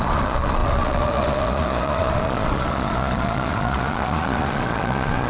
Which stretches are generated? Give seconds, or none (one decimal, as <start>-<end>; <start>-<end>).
0.0-5.3

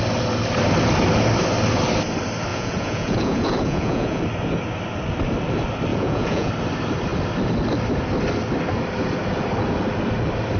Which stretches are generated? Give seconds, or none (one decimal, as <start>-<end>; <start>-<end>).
2.5-4.2; 5.9-6.5

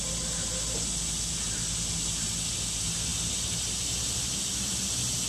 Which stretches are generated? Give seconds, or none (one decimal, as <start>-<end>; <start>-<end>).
none

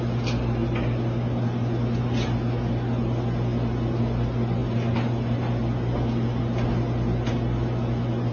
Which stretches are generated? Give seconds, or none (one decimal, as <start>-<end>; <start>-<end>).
none

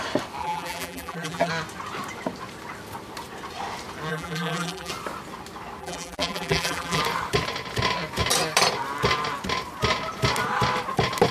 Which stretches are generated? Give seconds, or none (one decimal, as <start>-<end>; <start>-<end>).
0.4-1.5; 4.1-4.9; 5.8-7.0

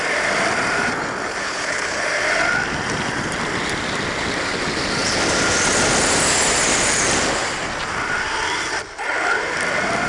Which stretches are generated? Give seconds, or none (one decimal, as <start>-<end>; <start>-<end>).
1.4-2.0

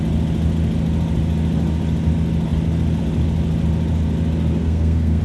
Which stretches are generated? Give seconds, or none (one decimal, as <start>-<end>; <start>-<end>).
4.6-5.2